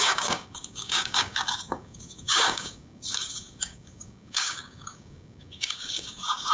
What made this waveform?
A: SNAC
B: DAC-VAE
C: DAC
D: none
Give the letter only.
C